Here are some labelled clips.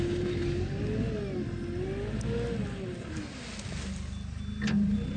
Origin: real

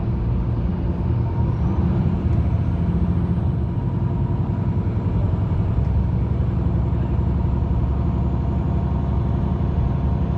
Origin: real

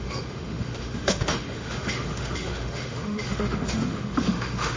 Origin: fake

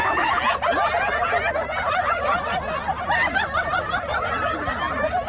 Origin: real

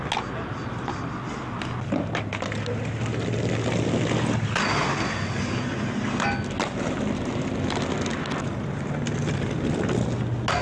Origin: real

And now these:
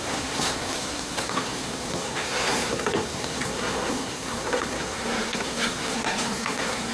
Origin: fake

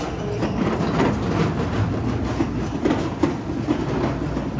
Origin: real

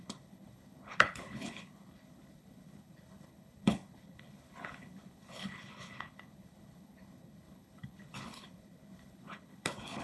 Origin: fake